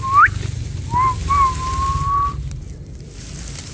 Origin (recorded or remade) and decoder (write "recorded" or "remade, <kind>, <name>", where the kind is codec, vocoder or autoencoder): recorded